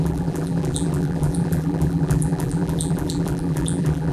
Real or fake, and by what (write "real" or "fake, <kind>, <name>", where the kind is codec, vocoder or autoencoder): fake, vocoder, BigVGAN v2